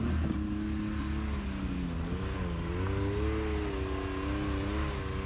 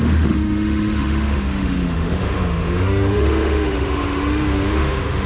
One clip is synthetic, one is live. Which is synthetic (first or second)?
second